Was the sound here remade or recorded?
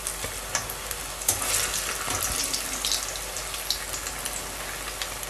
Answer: recorded